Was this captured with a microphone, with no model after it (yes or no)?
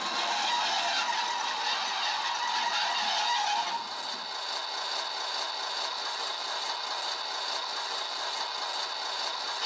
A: yes